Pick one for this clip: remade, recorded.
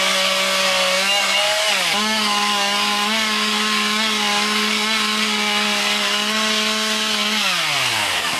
remade